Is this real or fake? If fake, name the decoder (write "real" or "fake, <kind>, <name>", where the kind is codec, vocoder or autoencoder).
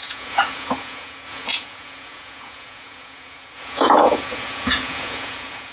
fake, vocoder, Vocos